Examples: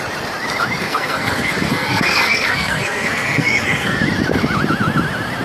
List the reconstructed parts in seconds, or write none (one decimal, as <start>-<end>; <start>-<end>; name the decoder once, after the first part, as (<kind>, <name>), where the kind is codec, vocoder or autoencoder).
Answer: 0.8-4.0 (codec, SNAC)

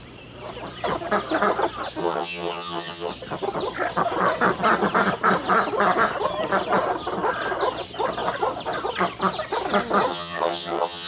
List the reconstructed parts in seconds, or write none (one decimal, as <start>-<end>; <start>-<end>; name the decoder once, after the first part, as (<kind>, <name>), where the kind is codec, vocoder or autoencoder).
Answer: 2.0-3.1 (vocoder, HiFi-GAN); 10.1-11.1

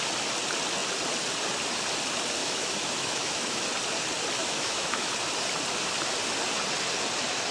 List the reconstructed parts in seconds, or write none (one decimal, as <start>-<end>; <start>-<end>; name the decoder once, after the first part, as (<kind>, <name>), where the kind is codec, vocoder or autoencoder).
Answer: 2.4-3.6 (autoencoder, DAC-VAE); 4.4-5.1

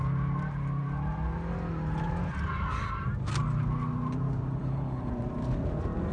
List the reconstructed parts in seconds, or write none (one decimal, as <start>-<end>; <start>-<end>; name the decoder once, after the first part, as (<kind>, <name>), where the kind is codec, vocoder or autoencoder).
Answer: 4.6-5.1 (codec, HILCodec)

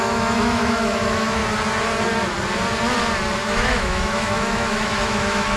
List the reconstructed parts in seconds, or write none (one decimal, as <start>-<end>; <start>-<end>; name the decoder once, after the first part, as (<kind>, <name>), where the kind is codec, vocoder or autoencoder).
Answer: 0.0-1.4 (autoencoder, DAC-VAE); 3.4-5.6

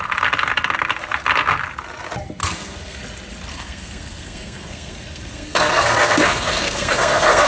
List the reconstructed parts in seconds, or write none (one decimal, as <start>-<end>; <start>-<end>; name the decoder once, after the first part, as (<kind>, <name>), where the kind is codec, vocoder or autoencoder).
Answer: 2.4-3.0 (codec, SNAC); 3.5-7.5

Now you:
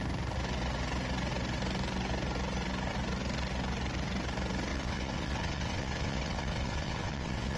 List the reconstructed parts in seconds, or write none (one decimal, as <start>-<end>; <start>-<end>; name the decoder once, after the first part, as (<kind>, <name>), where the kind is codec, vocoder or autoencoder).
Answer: 4.7-7.6 (vocoder, WaveNeXt)

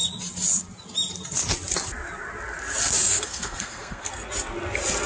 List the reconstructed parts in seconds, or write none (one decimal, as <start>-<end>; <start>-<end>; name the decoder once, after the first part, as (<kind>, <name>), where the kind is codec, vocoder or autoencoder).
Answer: 3.1-4.1 (codec, SNAC)